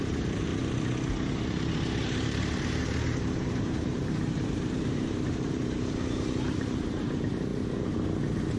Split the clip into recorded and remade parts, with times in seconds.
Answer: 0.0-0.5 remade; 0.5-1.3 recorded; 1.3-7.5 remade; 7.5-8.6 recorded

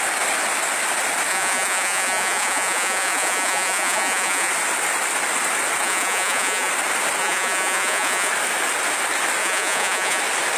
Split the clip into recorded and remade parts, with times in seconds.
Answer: 0.0-1.3 recorded; 1.3-4.5 remade; 4.5-5.8 recorded; 5.8-6.7 remade; 6.7-7.2 recorded; 7.2-8.3 remade; 8.3-9.4 recorded; 9.4-10.2 remade; 10.2-10.6 recorded

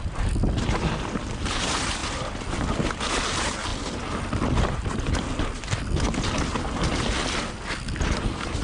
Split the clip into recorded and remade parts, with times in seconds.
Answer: 0.0-8.6 recorded

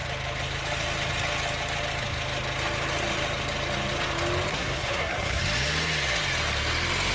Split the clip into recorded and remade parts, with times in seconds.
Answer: 0.0-4.5 recorded; 4.5-5.4 remade; 5.4-7.1 recorded

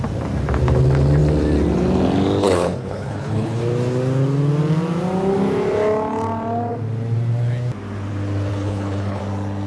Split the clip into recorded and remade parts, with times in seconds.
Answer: 0.0-2.4 recorded; 2.4-3.6 remade; 3.6-8.5 recorded; 8.5-9.2 remade; 9.2-9.7 recorded

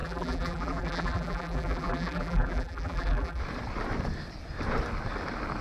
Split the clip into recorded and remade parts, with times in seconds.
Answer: 0.0-3.4 remade; 3.4-5.6 recorded

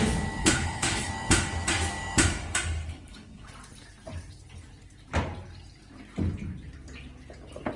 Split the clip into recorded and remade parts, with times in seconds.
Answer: 0.0-0.4 recorded; 0.4-1.1 remade; 1.1-2.9 recorded; 2.9-3.5 remade; 3.5-7.8 recorded